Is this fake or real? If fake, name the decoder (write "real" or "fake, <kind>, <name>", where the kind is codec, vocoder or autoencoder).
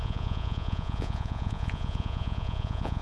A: fake, vocoder, Vocos